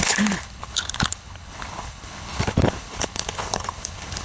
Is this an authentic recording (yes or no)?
no